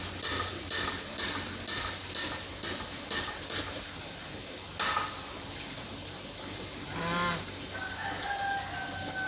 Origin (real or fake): real